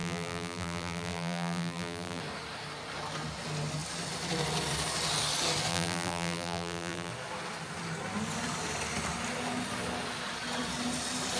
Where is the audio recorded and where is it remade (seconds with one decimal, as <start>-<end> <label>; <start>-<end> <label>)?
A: 0.0-2.2 remade; 2.2-5.7 recorded; 5.7-7.1 remade; 7.1-11.4 recorded

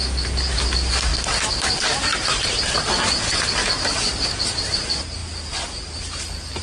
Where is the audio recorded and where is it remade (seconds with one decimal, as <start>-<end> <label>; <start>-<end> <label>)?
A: 0.0-1.1 recorded; 1.1-2.5 remade; 2.5-3.6 recorded; 3.6-4.6 remade; 4.6-5.2 recorded; 5.2-6.6 remade

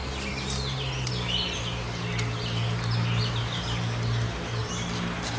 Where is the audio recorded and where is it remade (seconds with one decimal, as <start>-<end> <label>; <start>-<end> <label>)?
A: 0.0-4.6 recorded; 4.6-5.4 remade

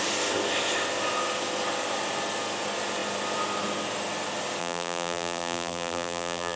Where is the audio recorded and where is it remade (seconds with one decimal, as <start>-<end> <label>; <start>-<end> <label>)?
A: 0.0-4.6 recorded; 4.6-6.6 remade

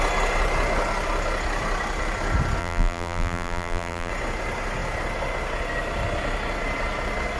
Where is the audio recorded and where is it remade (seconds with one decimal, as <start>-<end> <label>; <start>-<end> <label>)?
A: 0.0-2.6 recorded; 2.6-4.1 remade; 4.1-7.4 recorded

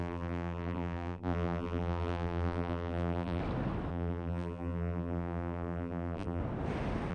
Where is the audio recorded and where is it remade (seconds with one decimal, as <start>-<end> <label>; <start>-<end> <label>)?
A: 0.0-3.4 remade; 3.4-3.9 recorded; 3.9-6.4 remade; 6.4-7.1 recorded

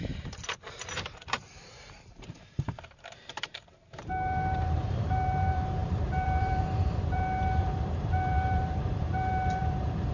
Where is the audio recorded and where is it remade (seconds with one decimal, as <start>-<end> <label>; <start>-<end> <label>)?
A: 0.0-10.1 remade

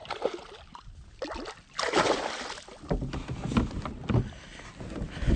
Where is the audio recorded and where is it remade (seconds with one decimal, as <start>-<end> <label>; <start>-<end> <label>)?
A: 0.0-5.4 recorded